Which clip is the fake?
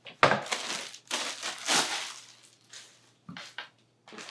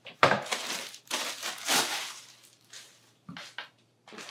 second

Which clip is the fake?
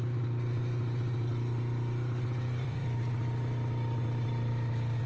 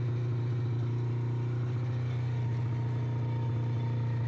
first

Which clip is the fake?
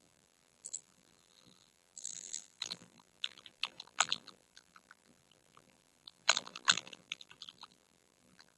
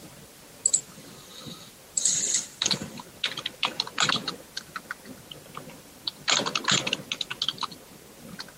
first